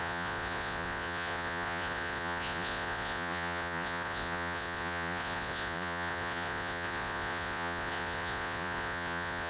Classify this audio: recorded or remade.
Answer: remade